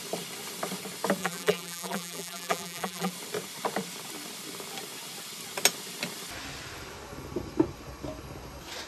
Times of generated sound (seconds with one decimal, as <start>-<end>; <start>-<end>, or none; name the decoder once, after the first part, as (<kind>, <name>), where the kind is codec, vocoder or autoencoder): 1.2-3.1 (vocoder, BigVGAN v2)